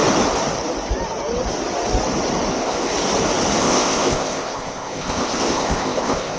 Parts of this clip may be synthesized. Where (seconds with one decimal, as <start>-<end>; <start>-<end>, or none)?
2.5-2.9; 3.6-6.4